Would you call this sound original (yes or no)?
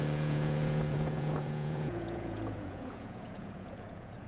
no